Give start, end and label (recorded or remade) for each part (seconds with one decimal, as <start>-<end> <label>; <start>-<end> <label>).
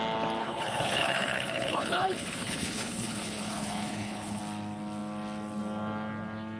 0.0-0.4 recorded; 0.4-4.4 remade; 4.4-6.6 recorded